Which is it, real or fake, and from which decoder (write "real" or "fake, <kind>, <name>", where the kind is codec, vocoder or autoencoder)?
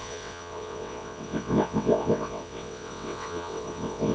fake, vocoder, WaveNeXt